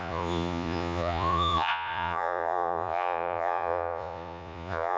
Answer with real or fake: fake